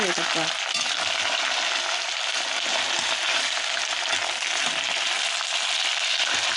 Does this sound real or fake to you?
real